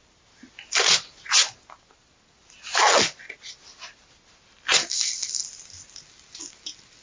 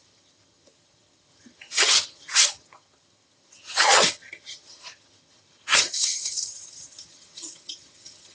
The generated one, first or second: second